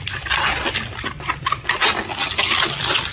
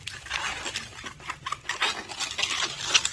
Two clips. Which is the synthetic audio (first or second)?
second